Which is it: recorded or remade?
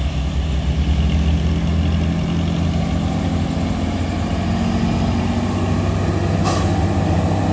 recorded